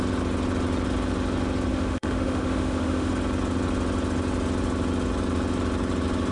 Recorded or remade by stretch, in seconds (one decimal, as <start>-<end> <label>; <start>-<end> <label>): 0.0-1.7 recorded; 1.7-3.1 remade; 3.1-6.3 recorded